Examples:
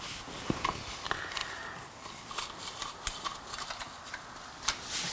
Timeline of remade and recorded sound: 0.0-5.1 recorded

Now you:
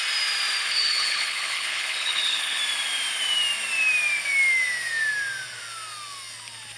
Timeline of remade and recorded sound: 0.0-0.7 recorded; 0.7-2.6 remade; 2.6-6.8 recorded

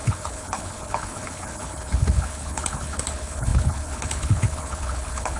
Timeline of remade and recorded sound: 0.0-5.4 remade

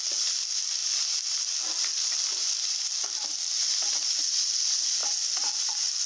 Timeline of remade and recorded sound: 0.0-6.1 recorded

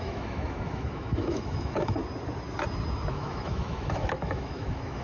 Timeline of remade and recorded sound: 0.0-2.0 remade; 2.0-3.1 recorded; 3.1-5.0 remade

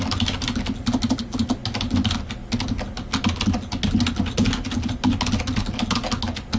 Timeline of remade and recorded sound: 0.0-6.6 recorded

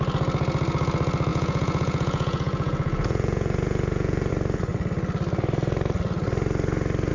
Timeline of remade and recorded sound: 0.0-1.3 recorded; 1.3-4.3 remade; 4.3-7.1 recorded